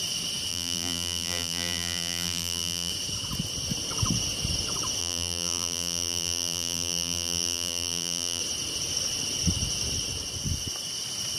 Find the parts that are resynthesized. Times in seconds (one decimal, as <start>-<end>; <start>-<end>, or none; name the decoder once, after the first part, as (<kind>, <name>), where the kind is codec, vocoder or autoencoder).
0.5-2.9 (vocoder, BigVGAN v2); 5.0-8.4